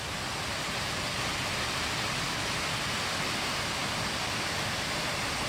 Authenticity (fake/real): real